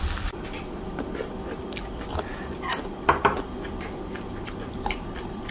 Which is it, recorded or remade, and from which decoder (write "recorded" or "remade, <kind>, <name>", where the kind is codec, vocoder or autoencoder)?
remade, vocoder, BigVGAN v2